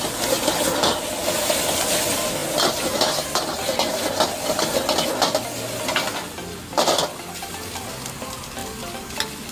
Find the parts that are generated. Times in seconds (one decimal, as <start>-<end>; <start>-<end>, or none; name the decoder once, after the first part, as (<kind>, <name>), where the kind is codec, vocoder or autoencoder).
none

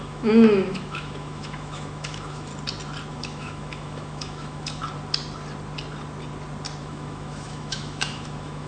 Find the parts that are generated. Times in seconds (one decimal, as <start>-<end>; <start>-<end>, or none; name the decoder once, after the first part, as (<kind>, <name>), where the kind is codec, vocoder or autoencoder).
0.0-2.5 (autoencoder, DAC-VAE); 3.1-4.8; 6.8-8.7

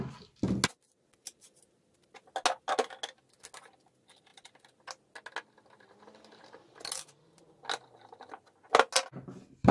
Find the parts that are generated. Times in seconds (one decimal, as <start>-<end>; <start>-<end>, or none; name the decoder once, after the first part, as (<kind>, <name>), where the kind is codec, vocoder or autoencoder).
none

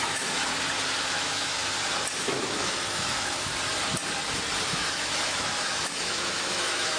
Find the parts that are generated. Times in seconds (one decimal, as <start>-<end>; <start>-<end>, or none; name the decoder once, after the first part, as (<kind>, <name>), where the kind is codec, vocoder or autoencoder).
0.0-0.5 (autoencoder, DAC-VAE); 1.0-1.6; 2.2-3.5; 4.7-7.0